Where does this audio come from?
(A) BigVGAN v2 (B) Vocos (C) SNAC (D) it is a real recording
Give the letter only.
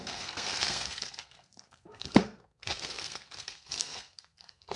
C